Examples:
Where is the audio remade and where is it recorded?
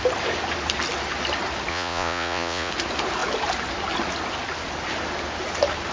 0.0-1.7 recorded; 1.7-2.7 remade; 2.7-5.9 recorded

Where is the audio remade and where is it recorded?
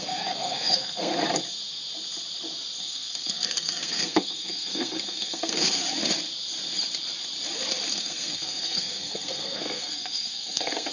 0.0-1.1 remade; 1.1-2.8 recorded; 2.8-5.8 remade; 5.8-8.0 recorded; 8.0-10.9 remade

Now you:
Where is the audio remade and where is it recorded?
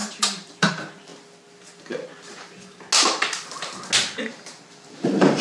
0.0-1.1 remade; 1.1-4.2 recorded; 4.2-5.4 remade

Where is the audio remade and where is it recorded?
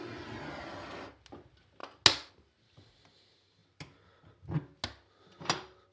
0.0-5.9 recorded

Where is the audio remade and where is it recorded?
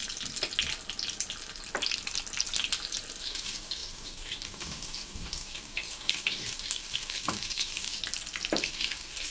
0.0-3.2 recorded; 3.2-8.0 remade; 8.0-8.6 recorded; 8.6-9.3 remade